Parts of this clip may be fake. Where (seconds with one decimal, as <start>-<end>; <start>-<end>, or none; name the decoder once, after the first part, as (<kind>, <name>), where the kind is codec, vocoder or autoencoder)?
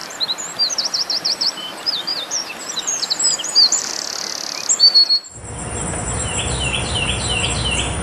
0.0-3.9 (vocoder, BigVGAN v2); 6.0-8.0